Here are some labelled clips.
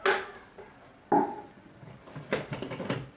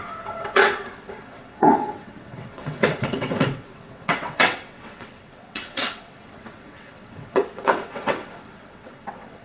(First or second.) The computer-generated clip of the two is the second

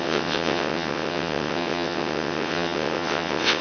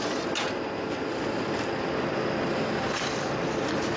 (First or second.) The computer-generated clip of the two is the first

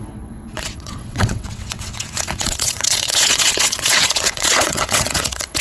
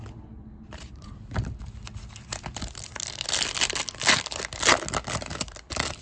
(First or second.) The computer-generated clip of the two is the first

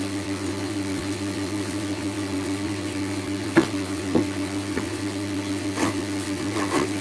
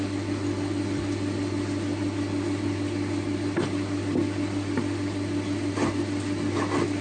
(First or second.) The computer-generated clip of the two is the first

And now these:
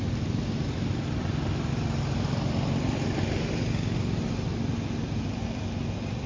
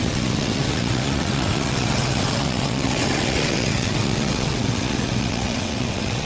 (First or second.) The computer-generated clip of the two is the second